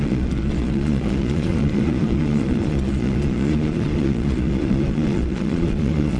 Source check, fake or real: fake